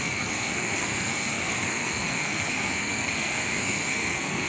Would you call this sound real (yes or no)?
no